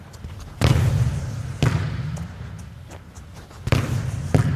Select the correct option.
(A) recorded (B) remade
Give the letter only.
A